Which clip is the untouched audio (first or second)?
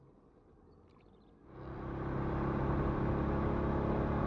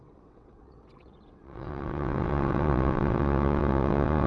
first